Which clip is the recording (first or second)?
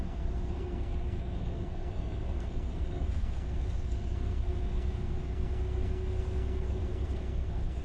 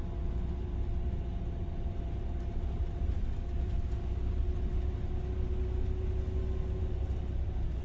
second